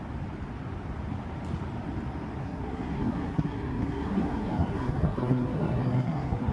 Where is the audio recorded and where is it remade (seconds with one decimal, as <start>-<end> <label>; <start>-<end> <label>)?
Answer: 0.0-2.4 recorded; 2.4-6.5 remade